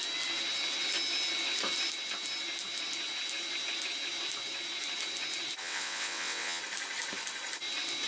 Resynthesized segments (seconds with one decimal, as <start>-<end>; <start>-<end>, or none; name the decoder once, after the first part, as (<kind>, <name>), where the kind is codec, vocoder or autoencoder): 5.6-6.6 (vocoder, WaveNeXt)